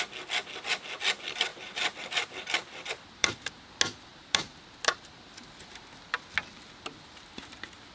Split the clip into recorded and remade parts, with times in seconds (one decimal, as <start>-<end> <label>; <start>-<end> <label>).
0.0-1.5 recorded; 1.5-3.6 remade; 3.6-4.1 recorded; 4.1-5.3 remade; 5.3-7.9 recorded